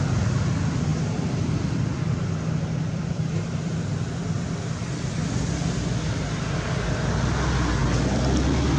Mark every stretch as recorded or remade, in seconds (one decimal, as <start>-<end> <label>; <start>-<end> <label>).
0.0-8.8 recorded